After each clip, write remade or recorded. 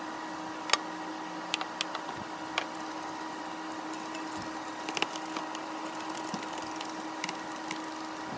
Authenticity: recorded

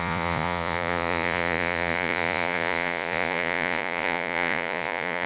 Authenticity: remade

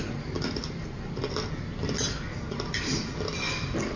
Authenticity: recorded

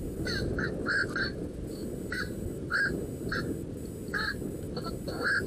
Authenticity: recorded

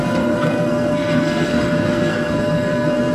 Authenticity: remade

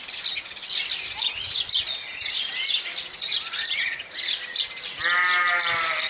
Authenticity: recorded